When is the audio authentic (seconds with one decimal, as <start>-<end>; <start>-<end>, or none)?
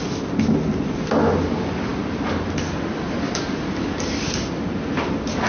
0.0-5.5